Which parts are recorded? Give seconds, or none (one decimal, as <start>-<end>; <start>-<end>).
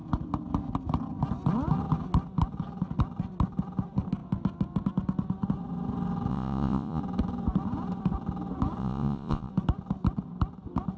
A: 0.0-6.3; 7.0-8.8; 9.5-11.0